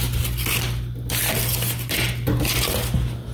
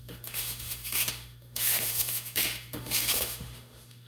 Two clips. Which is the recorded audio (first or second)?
first